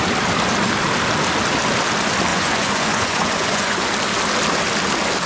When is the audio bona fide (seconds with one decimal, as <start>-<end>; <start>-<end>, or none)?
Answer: 0.0-2.3; 3.9-5.3